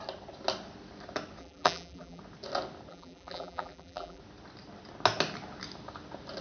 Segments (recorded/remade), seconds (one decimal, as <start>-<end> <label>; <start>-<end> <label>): 0.0-1.4 recorded; 1.4-2.2 remade; 2.2-2.9 recorded; 2.9-4.2 remade; 4.2-6.4 recorded